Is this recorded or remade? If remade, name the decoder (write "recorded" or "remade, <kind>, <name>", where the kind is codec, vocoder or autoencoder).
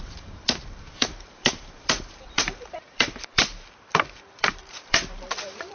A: remade, vocoder, BigVGAN v2